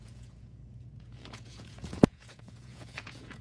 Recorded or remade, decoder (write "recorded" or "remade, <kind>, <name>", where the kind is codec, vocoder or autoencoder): remade, vocoder, Vocos